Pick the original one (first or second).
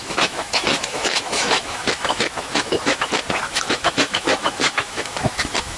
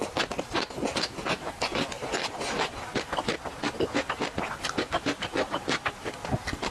second